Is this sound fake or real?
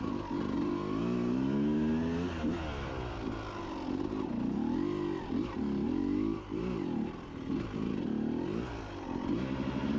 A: real